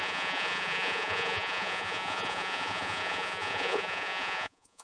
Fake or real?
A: fake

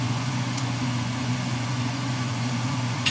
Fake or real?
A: fake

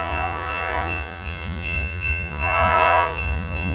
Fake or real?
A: fake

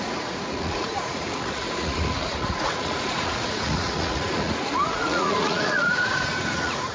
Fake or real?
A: fake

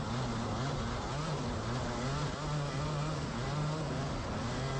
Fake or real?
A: real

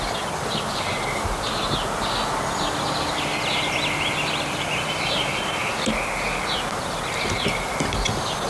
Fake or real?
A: real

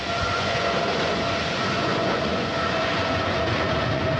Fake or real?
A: fake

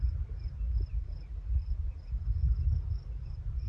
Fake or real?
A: real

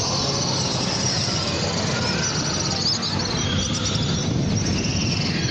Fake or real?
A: real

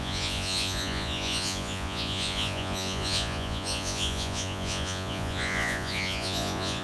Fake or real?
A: fake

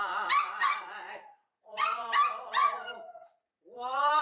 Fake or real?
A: fake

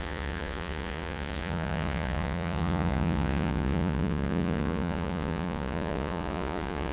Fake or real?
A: fake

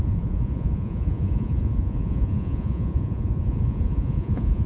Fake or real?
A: fake